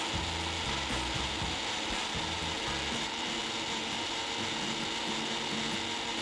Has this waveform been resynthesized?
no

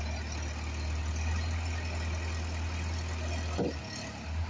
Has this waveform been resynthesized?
no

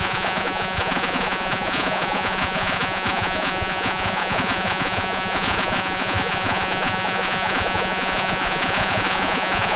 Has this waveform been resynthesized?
yes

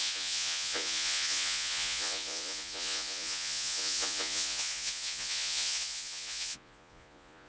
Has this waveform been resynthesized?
yes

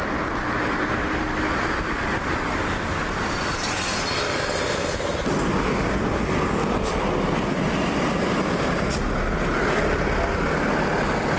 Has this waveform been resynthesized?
no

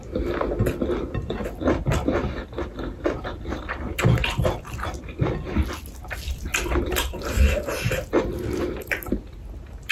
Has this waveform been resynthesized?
no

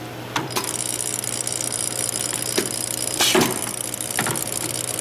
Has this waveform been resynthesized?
no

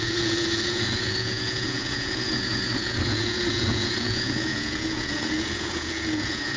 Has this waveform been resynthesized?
yes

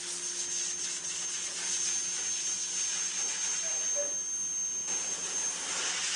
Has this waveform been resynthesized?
no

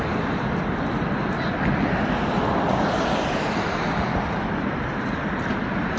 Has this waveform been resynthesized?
no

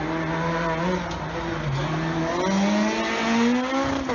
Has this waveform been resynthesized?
no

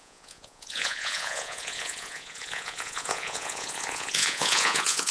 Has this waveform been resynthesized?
yes